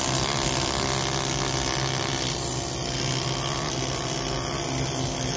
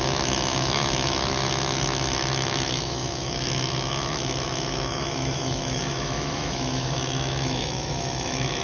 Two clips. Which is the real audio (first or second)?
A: first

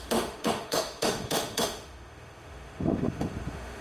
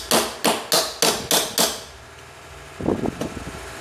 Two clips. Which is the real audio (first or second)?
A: second